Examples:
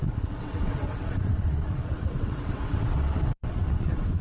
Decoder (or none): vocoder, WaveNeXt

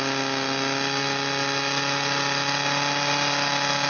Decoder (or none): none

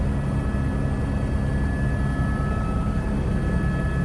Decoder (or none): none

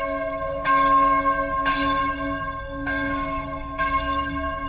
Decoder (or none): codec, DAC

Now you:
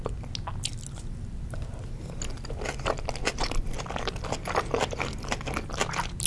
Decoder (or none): none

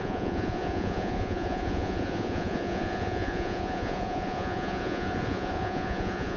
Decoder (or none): vocoder, Vocos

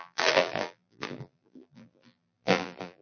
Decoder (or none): vocoder, BigVGAN v2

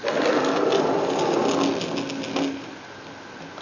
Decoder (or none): none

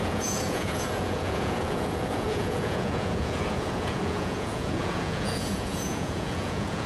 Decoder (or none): vocoder, Vocos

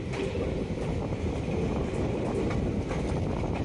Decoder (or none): none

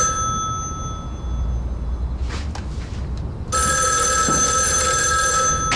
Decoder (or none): none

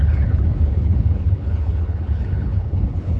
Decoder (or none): codec, HILCodec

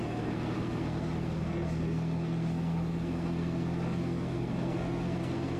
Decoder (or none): codec, SNAC